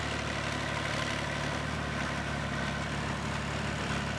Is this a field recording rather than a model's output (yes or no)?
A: yes